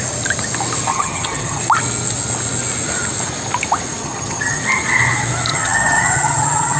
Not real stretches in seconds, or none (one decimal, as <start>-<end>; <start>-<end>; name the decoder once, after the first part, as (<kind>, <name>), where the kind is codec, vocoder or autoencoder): 0.9-1.6 (vocoder, HiFi-GAN); 4.0-4.6; 5.5-6.8